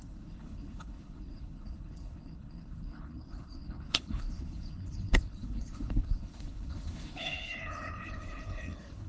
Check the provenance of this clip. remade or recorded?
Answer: remade